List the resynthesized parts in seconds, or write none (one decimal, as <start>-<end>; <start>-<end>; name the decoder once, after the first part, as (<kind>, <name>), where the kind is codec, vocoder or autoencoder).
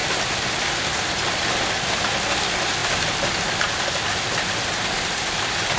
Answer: 2.8-5.8 (vocoder, BigVGAN v2)